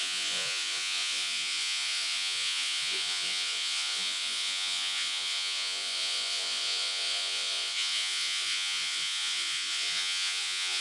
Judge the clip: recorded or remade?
remade